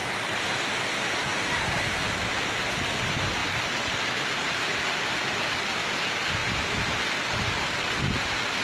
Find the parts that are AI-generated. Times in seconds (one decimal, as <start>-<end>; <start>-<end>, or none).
0.0-0.6; 1.3-1.8; 6.4-7.0